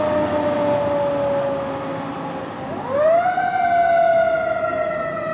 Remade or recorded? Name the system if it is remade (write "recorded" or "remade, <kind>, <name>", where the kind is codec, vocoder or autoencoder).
recorded